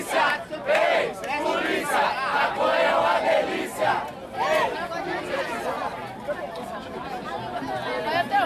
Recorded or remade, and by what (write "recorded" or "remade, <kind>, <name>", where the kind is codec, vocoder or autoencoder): recorded